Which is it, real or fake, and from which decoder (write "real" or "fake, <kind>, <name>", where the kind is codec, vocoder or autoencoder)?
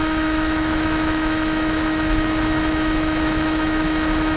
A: fake, autoencoder, DAC-VAE